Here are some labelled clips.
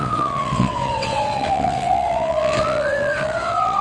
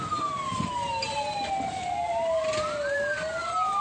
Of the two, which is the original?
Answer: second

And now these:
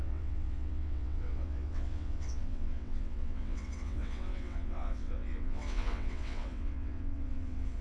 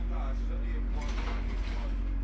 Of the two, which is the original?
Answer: second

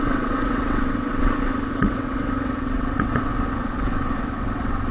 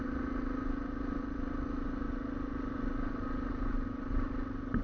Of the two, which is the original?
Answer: second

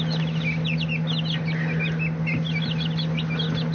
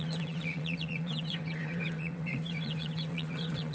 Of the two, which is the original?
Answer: first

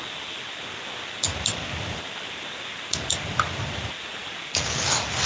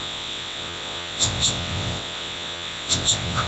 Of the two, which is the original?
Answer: first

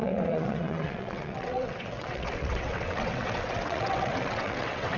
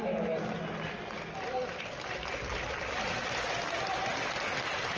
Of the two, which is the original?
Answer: second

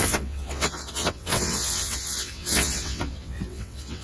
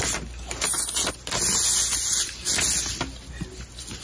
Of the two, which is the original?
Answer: second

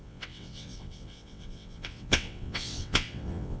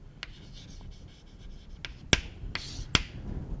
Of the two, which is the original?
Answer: second